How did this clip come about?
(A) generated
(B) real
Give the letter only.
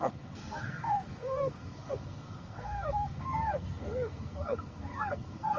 A